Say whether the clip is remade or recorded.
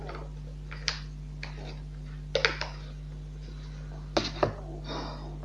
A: recorded